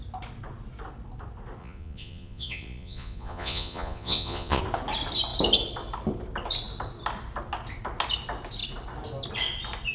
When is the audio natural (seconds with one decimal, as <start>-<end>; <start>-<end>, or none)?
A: 0.0-1.6; 4.6-9.9